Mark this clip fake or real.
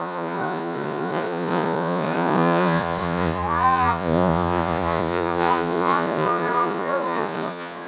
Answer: fake